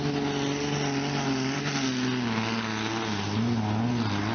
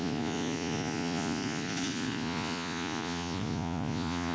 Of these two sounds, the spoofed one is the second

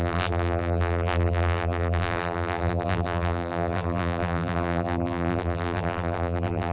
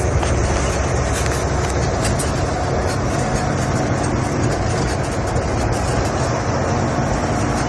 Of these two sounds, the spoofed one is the first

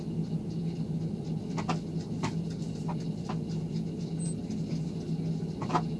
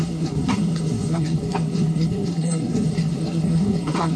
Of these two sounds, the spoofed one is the second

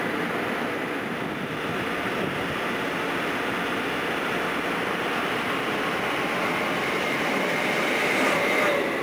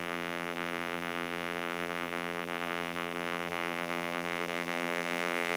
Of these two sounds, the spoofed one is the second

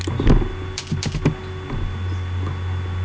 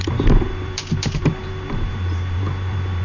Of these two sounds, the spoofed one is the second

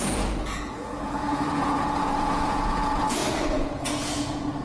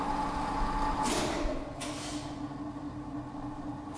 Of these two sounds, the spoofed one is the first